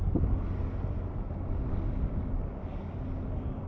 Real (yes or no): yes